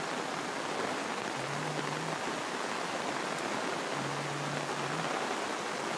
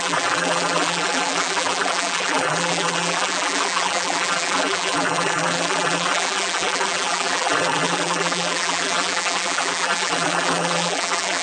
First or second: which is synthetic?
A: second